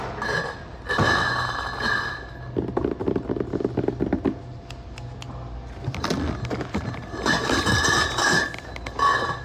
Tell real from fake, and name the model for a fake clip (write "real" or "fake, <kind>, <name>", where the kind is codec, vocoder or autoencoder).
real